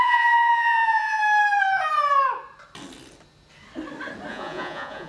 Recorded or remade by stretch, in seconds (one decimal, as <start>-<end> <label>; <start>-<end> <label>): 0.0-1.2 remade; 1.2-4.3 recorded; 4.3-5.1 remade